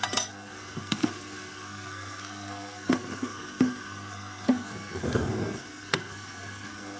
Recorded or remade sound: remade